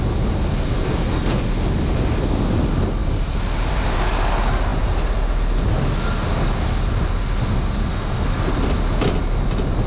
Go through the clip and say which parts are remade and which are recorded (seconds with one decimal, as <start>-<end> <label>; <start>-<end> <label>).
0.0-0.9 recorded; 0.9-1.4 remade; 1.4-7.9 recorded; 7.9-8.5 remade; 8.5-9.9 recorded